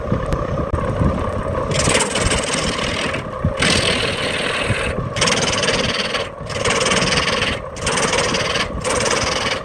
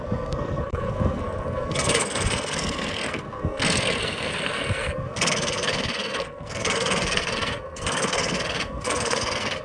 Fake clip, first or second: second